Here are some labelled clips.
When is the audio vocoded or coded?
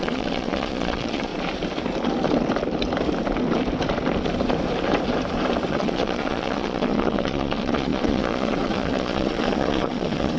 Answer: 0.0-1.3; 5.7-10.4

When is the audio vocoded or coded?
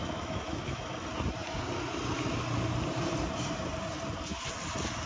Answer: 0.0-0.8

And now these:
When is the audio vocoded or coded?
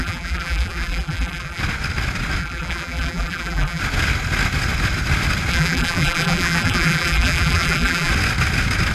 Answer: 0.0-1.6; 2.4-3.8; 5.5-8.1